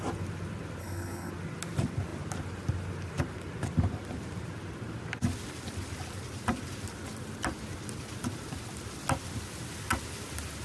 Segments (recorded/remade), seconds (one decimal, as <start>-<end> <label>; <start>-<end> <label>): 0.0-0.8 recorded; 0.8-1.3 remade; 1.3-10.6 recorded

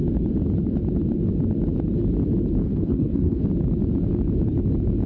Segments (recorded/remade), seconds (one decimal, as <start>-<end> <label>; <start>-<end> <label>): 0.0-2.6 recorded; 2.6-3.4 remade; 3.4-5.1 recorded

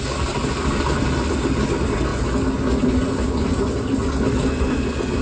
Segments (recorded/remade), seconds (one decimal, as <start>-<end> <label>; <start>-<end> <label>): 0.0-5.2 recorded

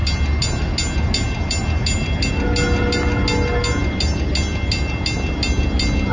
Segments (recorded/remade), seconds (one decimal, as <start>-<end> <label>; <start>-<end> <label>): 0.0-6.1 recorded

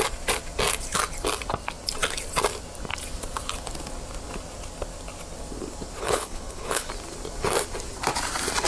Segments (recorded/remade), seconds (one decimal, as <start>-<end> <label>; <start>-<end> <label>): 0.0-6.0 recorded; 6.0-6.9 remade; 6.9-8.7 recorded

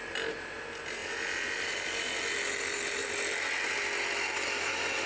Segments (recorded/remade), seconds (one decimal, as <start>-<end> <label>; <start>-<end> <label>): 0.0-5.1 recorded

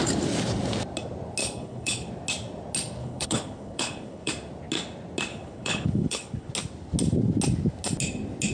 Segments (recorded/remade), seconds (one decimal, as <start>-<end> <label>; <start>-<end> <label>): 0.0-1.4 recorded; 1.4-2.1 remade; 2.1-3.0 recorded; 3.0-4.3 remade; 4.3-5.3 recorded; 5.3-6.5 remade; 6.5-8.5 recorded

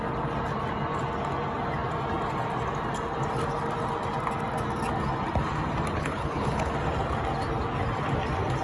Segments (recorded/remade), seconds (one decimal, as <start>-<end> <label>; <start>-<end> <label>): 0.0-5.9 recorded; 5.9-6.7 remade; 6.7-8.6 recorded